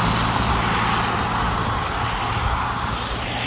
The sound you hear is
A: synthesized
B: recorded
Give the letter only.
B